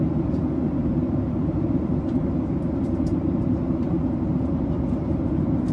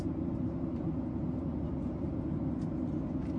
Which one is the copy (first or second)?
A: first